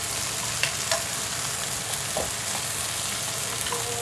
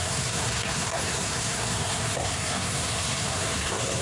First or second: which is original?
first